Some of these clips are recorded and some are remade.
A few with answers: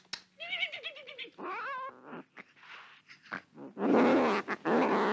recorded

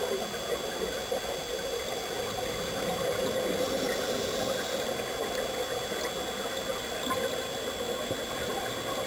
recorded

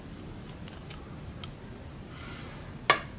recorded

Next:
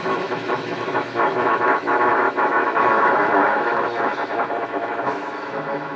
remade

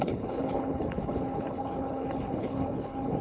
remade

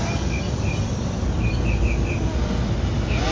recorded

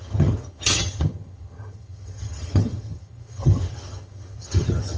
remade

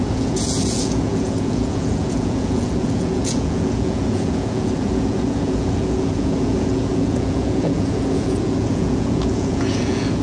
remade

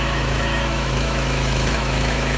remade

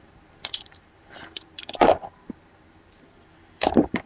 remade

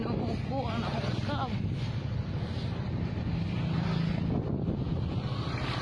recorded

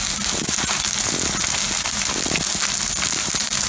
recorded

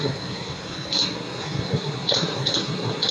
remade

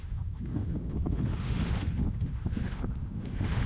remade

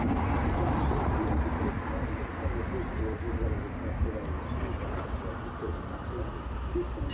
recorded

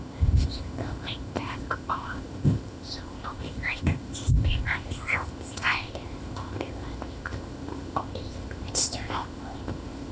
remade